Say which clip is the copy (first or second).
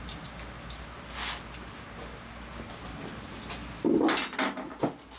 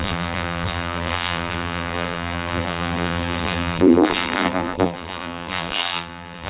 second